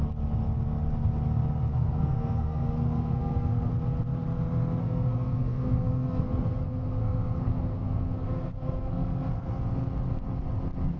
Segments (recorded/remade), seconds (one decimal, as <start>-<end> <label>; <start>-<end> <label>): 0.0-1.7 recorded; 1.7-3.7 remade; 3.7-4.8 recorded; 4.8-9.6 remade; 9.6-11.0 recorded